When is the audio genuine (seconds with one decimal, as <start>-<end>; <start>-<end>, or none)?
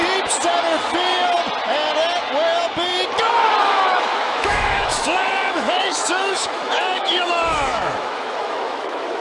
0.0-3.6